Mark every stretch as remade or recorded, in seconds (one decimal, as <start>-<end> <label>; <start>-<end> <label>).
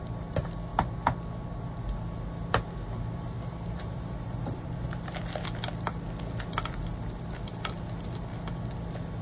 0.0-9.2 recorded